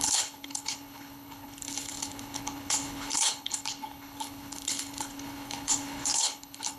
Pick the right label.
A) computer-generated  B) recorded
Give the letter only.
A